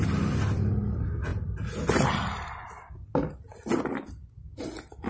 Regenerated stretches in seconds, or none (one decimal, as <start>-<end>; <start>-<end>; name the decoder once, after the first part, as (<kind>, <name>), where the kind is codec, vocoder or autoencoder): none